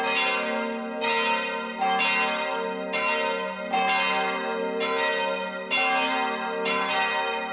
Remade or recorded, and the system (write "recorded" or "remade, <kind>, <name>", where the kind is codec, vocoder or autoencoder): recorded